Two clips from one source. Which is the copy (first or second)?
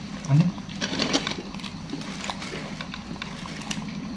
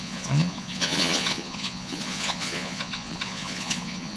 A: second